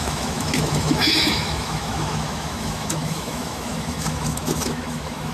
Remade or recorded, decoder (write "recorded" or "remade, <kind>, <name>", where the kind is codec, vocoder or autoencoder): remade, autoencoder, DAC-VAE